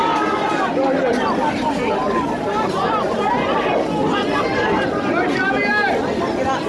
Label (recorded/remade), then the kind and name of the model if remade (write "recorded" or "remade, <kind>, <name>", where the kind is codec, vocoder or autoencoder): recorded